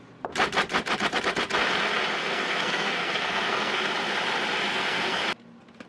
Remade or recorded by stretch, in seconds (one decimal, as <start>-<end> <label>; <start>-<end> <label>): 0.0-2.2 recorded; 2.2-3.8 remade; 3.8-4.7 recorded; 4.7-5.2 remade; 5.2-5.9 recorded